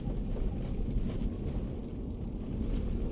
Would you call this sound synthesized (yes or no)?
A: no